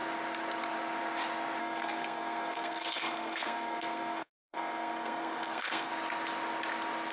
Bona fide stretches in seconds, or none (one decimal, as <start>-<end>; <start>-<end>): 0.0-1.6; 5.9-7.1